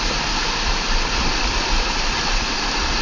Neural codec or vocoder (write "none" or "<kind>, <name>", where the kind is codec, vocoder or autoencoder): none